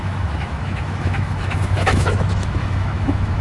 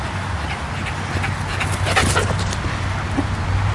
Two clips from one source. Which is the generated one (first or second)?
first